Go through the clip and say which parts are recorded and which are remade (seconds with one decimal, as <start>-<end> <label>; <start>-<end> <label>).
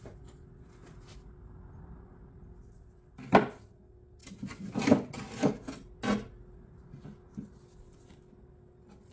0.0-9.1 recorded